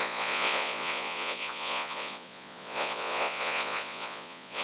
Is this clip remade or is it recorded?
remade